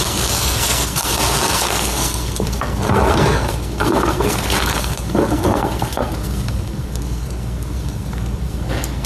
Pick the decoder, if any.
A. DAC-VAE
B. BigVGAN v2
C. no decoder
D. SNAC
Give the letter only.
D